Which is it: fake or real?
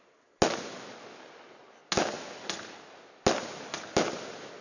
real